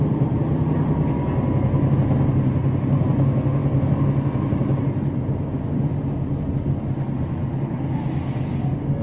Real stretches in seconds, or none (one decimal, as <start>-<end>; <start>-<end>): 0.0-9.0